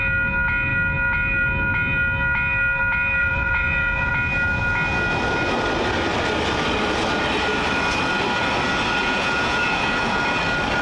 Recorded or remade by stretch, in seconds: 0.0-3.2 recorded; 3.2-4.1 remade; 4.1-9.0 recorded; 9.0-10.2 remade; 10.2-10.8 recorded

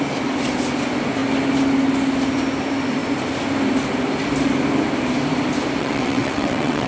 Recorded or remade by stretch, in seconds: 0.0-5.8 recorded; 5.8-6.9 remade

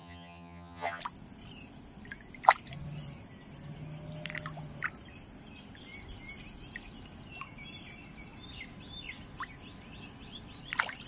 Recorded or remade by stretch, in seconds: 0.0-1.0 remade; 1.0-11.1 recorded

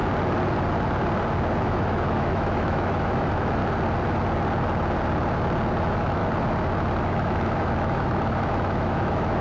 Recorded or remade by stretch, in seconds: 0.0-1.5 recorded; 1.5-3.6 remade; 3.6-5.8 recorded; 5.8-6.2 remade; 6.2-7.0 recorded; 7.0-9.4 remade

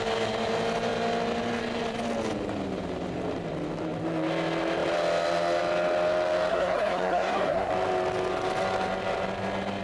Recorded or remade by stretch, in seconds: 0.0-6.5 recorded; 6.5-7.7 remade; 7.7-9.8 recorded